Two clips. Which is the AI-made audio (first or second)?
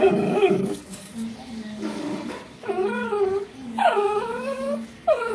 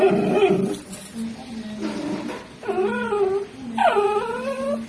first